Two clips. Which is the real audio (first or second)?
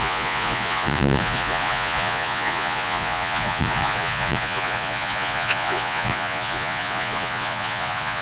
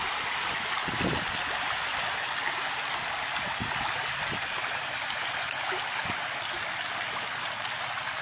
second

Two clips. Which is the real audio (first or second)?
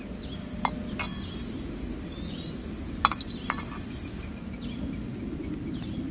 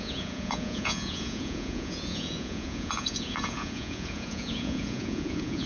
first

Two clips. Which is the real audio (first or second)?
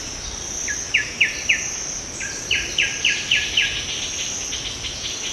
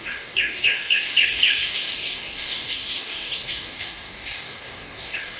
first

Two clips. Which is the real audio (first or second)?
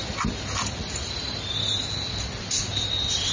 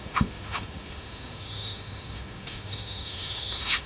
first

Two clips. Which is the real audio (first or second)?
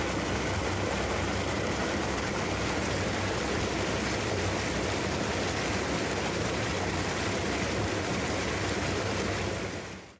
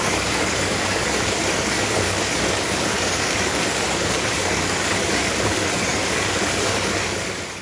first